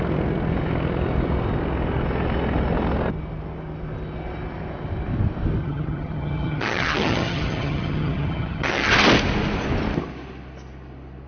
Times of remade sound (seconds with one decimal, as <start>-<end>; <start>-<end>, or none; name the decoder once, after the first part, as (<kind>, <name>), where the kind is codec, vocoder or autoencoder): 5.6-8.9 (vocoder, HiFi-GAN)

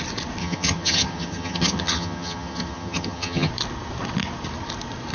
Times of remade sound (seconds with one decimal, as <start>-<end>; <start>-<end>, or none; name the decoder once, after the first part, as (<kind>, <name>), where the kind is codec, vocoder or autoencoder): 0.4-3.5 (vocoder, HiFi-GAN)

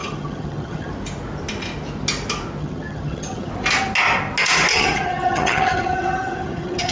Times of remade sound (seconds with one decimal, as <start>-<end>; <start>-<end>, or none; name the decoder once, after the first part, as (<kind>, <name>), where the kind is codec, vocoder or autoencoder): 0.0-0.9 (vocoder, HiFi-GAN); 2.6-3.5; 4.7-6.9

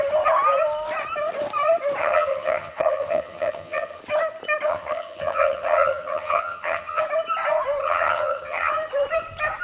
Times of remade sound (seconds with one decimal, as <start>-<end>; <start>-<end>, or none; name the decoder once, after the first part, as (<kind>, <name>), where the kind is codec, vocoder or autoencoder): 2.0-4.0 (vocoder, HiFi-GAN); 4.7-7.0; 7.8-8.7

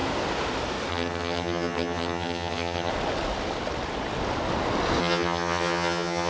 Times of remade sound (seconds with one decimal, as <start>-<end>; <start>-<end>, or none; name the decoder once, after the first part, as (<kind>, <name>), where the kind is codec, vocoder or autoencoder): 0.9-2.9 (vocoder, HiFi-GAN); 5.0-6.3

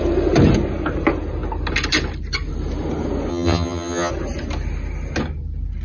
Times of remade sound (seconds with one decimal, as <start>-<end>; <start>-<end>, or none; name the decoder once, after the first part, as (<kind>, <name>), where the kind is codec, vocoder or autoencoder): 3.3-4.1 (vocoder, HiFi-GAN)

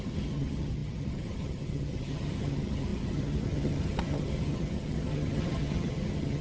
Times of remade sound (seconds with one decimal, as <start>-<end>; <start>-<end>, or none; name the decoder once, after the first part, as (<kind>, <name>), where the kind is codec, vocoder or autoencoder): 0.0-6.4 (vocoder, HiFi-GAN)

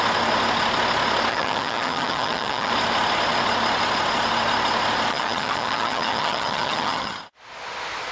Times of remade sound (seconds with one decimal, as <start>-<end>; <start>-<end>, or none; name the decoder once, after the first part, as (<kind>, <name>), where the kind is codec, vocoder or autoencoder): 1.3-2.7 (vocoder, HiFi-GAN); 5.1-7.2